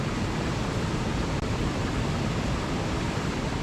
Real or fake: fake